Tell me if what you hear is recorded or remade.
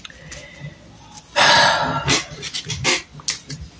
recorded